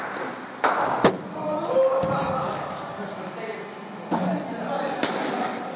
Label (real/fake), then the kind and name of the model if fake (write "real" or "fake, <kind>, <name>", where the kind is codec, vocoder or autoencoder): real